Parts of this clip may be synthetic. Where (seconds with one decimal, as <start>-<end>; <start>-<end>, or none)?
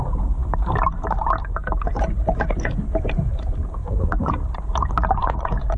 3.8-4.3